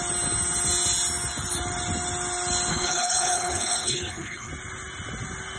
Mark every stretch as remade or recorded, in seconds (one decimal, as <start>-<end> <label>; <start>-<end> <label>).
0.0-2.7 recorded; 2.7-4.5 remade; 4.5-5.6 recorded